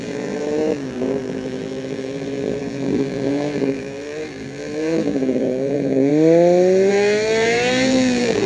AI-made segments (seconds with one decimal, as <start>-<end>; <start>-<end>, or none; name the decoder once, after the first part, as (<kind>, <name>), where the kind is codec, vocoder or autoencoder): 0.0-6.1 (vocoder, BigVGAN v2); 6.9-8.5